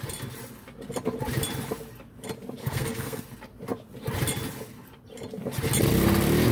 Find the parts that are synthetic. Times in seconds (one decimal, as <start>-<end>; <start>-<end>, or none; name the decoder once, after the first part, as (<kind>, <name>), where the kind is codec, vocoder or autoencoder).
2.6-3.2 (codec, SNAC)